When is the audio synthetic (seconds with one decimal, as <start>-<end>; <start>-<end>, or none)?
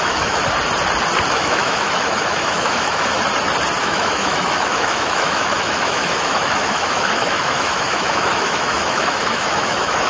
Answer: 0.0-0.4; 1.3-3.1; 3.8-10.1